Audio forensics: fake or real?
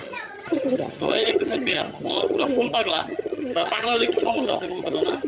fake